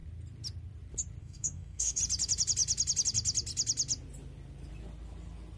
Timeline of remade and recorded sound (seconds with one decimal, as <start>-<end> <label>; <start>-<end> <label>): 0.0-1.2 recorded; 1.2-2.0 remade; 2.0-5.6 recorded